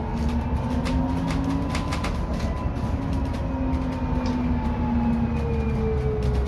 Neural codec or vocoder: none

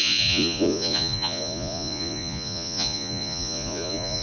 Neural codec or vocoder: vocoder, Vocos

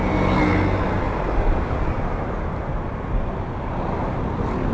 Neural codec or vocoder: none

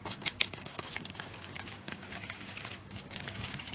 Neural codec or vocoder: codec, DAC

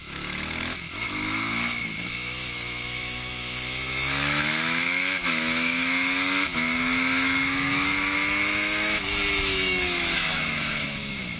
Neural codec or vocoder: autoencoder, DAC-VAE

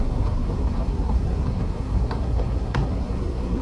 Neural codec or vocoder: codec, SNAC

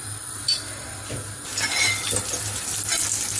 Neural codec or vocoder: none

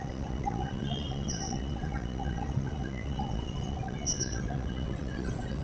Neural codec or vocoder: vocoder, WaveNeXt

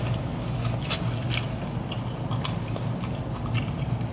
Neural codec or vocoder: none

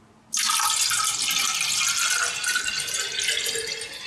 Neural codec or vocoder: none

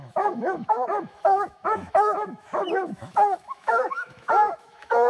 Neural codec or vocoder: autoencoder, DAC-VAE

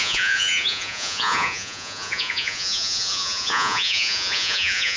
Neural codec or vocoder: vocoder, Vocos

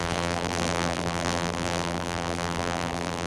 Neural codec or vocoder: vocoder, BigVGAN v2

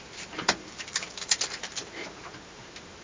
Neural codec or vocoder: vocoder, BigVGAN v2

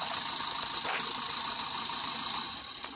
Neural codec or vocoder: none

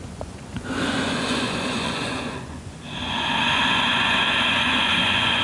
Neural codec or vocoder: vocoder, Vocos